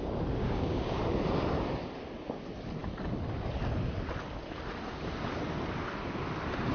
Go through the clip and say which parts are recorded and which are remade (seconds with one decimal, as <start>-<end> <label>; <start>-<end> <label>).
0.0-0.4 recorded; 0.4-1.0 remade; 1.0-6.7 recorded